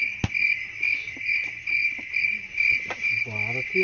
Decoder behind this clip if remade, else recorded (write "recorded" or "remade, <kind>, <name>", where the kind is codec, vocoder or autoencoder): recorded